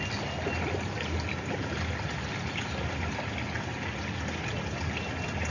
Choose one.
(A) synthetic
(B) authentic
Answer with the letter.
B